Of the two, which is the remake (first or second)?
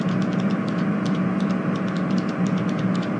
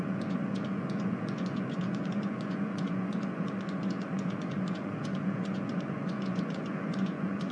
second